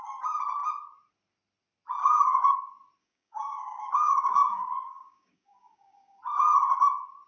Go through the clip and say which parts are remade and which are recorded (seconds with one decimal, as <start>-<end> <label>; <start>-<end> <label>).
0.0-2.0 recorded; 2.0-2.6 remade; 2.6-3.0 recorded; 3.0-6.2 remade; 6.2-7.3 recorded